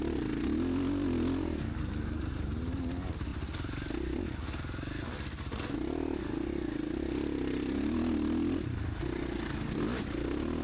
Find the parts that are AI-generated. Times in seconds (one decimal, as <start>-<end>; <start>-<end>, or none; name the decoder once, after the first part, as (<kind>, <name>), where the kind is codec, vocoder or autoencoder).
3.3-4.2 (vocoder, BigVGAN v2)